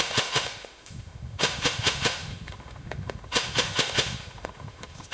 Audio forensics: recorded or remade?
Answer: remade